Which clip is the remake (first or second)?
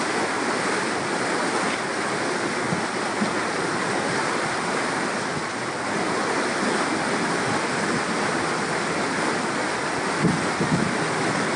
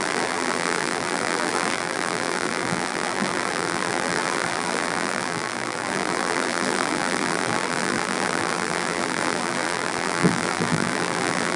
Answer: second